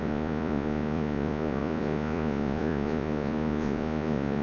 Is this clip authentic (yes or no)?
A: no